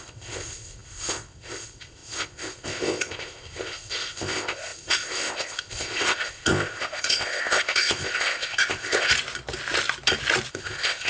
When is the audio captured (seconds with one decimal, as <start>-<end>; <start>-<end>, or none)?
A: 9.1-10.5